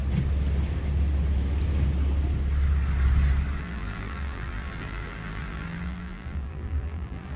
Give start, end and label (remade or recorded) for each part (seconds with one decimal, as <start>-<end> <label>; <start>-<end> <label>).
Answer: 0.0-3.6 recorded; 3.6-7.4 remade